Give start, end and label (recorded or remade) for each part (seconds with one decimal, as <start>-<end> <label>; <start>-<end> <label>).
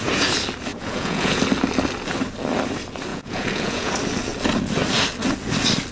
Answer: 0.0-0.7 recorded; 0.7-1.4 remade; 1.4-3.1 recorded; 3.1-3.9 remade; 3.9-5.9 recorded